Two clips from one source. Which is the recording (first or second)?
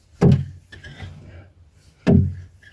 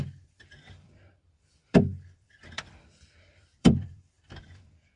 first